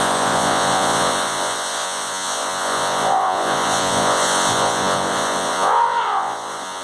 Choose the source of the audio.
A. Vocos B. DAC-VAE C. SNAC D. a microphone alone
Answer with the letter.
A